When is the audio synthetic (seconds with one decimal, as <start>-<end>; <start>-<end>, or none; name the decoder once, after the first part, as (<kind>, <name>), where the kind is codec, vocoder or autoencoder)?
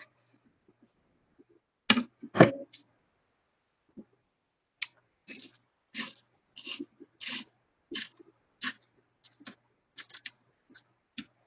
5.2-7.1 (vocoder, BigVGAN v2)